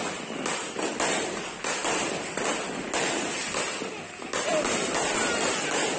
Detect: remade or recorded recorded